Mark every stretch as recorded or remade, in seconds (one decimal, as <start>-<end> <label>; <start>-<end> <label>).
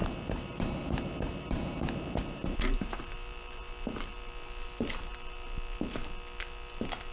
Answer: 0.0-4.2 remade; 4.2-7.1 recorded